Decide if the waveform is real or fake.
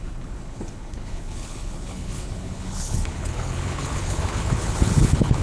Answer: fake